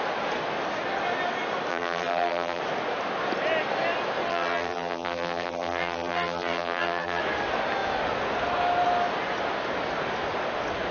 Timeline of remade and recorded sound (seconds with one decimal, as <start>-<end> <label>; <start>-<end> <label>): 0.0-1.7 recorded; 1.7-2.6 remade; 2.6-4.3 recorded; 4.3-7.2 remade; 7.2-10.9 recorded